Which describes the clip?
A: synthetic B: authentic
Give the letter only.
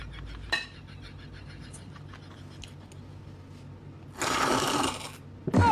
B